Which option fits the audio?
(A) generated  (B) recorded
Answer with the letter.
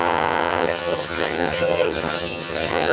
A